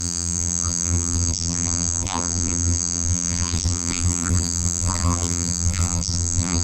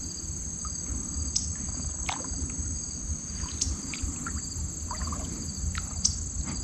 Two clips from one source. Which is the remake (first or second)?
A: first